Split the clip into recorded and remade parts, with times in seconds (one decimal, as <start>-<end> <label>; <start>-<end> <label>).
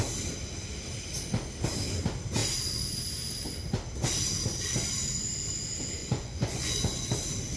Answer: 0.0-6.0 recorded; 6.0-7.1 remade; 7.1-7.6 recorded